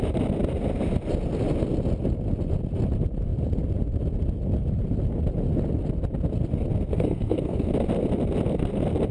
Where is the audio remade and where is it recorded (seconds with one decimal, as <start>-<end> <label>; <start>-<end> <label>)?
0.0-6.9 recorded; 6.9-7.7 remade; 7.7-9.1 recorded